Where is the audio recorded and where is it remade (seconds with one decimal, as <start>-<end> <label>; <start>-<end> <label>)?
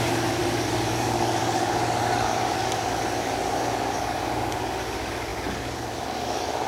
0.0-6.7 remade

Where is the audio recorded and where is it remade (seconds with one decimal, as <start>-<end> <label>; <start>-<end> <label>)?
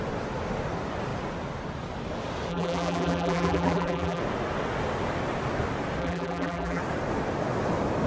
0.0-2.5 recorded; 2.5-4.2 remade; 4.2-6.0 recorded; 6.0-6.8 remade; 6.8-8.1 recorded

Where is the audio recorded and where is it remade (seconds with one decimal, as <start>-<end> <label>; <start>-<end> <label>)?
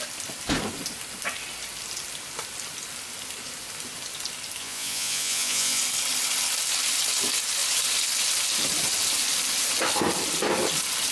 0.0-4.6 recorded; 4.6-5.8 remade; 5.8-11.1 recorded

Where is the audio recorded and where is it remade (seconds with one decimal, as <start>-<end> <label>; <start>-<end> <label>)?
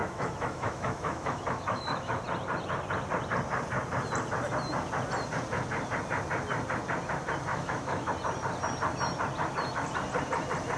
0.0-2.2 remade; 2.2-7.5 recorded; 7.5-8.1 remade; 8.1-10.8 recorded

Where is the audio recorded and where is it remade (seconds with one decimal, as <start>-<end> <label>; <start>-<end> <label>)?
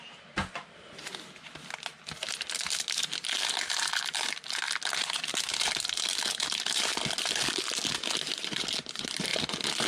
0.0-9.9 recorded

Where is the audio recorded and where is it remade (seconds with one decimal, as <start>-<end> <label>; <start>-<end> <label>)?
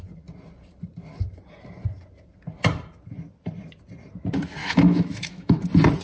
0.0-4.6 recorded; 4.6-5.6 remade; 5.6-6.0 recorded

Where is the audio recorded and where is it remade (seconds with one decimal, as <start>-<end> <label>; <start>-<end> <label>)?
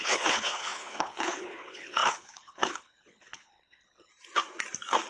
0.0-4.1 remade; 4.1-5.1 recorded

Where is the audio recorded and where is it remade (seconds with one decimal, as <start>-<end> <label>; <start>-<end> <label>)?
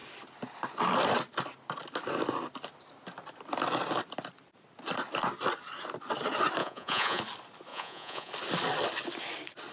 0.0-6.6 recorded; 6.6-7.2 remade; 7.2-7.7 recorded; 7.7-8.3 remade; 8.3-9.7 recorded